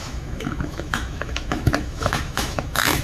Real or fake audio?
fake